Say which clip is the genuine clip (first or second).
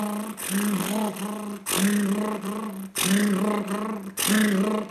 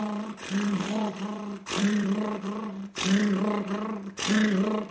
first